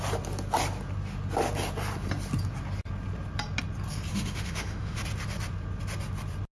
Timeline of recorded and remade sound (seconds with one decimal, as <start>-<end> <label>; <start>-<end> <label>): 0.0-4.1 recorded; 4.1-5.0 remade; 5.0-6.5 recorded